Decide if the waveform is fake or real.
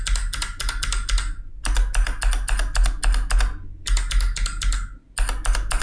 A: real